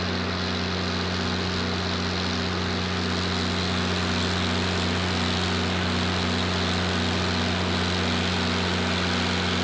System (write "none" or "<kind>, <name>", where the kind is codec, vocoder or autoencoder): none